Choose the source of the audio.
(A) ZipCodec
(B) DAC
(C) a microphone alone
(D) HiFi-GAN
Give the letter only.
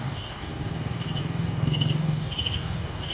B